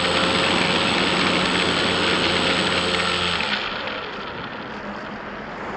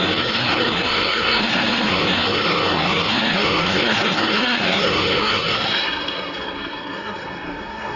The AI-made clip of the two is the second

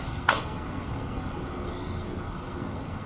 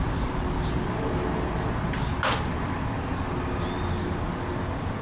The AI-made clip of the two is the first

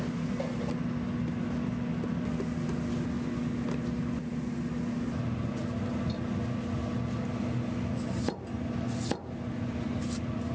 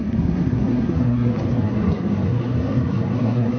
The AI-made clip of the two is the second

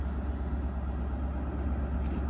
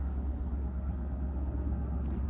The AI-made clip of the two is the second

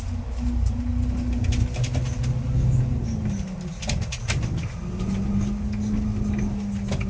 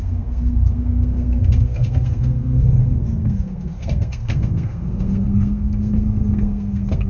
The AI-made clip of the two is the second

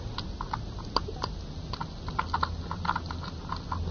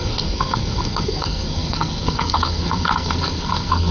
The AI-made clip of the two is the second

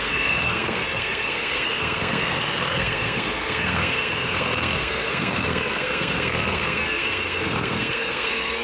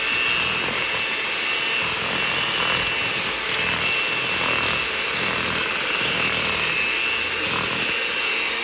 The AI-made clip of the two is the first